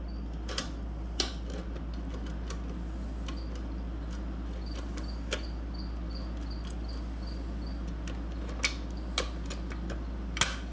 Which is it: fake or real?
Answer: real